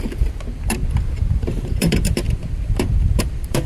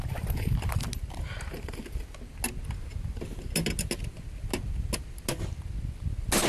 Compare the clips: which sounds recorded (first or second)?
second